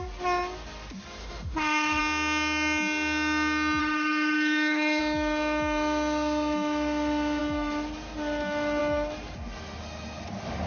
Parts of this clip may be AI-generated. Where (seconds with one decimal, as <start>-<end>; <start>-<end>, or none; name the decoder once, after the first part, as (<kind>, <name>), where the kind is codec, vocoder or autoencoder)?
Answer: 1.2-2.0 (autoencoder, DAC-VAE); 3.8-5.0